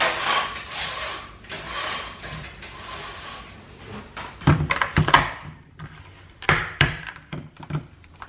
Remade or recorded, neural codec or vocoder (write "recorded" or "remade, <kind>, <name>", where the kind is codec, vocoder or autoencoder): recorded